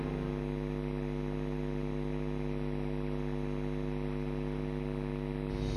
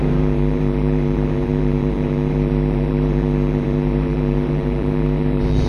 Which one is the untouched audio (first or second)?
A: first